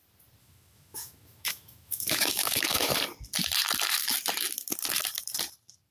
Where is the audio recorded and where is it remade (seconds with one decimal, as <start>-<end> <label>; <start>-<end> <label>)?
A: 0.0-0.4 recorded; 0.4-2.9 remade; 2.9-5.9 recorded